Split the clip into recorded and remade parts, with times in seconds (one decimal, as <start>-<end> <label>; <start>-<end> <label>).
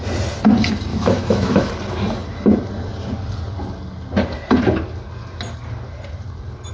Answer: 0.0-0.9 recorded; 0.9-1.7 remade; 1.7-6.7 recorded